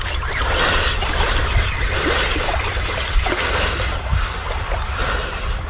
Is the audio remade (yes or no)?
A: no